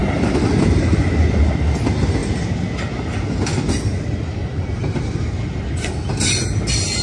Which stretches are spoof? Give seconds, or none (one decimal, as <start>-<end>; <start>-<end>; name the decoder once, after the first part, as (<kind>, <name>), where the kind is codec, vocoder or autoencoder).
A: none